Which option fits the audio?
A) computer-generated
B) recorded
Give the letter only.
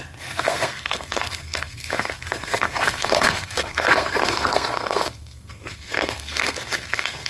A